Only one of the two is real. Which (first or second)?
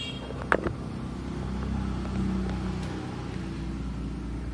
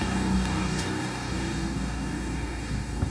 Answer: first